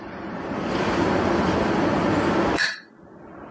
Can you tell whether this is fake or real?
real